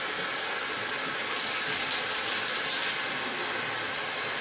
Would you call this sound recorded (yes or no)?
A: yes